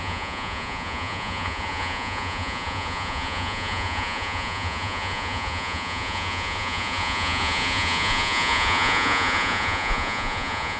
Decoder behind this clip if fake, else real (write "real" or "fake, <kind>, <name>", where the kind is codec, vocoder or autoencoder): fake, vocoder, Vocos